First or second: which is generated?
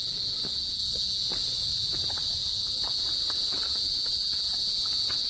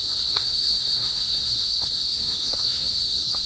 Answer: second